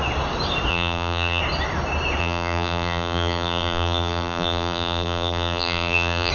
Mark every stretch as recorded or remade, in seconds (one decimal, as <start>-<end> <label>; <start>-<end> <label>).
0.0-0.7 recorded; 0.7-1.4 remade; 1.4-2.2 recorded; 2.2-6.3 remade

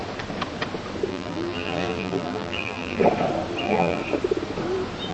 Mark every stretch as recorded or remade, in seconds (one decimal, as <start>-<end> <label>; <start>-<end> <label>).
0.0-1.1 recorded; 1.1-3.0 remade; 3.0-3.6 recorded; 3.6-4.0 remade; 4.0-5.1 recorded

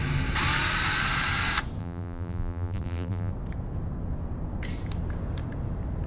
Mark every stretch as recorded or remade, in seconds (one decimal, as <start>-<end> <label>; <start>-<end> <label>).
0.0-1.8 recorded; 1.8-3.3 remade; 3.3-6.1 recorded

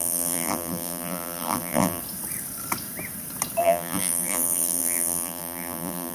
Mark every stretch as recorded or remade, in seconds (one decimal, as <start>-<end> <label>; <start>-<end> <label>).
0.0-2.0 remade; 2.0-3.6 recorded; 3.6-6.1 remade

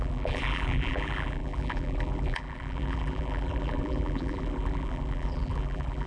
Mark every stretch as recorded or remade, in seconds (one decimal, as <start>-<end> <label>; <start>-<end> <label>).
0.0-6.1 remade

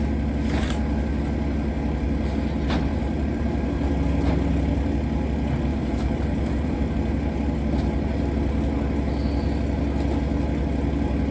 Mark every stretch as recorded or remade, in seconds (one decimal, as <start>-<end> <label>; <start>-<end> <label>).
0.0-2.9 recorded; 2.9-3.9 remade; 3.9-5.7 recorded; 5.7-6.9 remade; 6.9-11.3 recorded

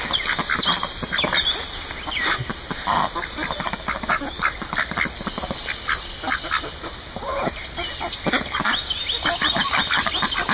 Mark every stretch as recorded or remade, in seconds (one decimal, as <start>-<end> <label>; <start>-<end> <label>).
0.0-10.5 recorded

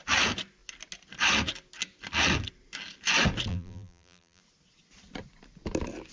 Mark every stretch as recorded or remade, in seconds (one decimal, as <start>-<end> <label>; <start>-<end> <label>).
0.0-3.5 recorded; 3.5-4.4 remade; 4.4-6.1 recorded